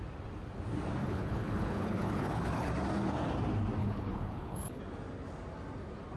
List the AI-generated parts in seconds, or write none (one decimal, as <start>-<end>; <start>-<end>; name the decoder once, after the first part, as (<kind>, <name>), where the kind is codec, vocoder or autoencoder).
1.0-2.7 (codec, HILCodec); 3.8-4.8